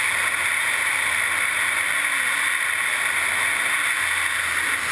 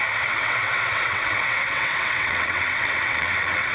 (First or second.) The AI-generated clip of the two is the second